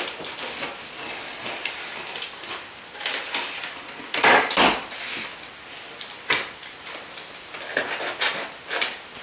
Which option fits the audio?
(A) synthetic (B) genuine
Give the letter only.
B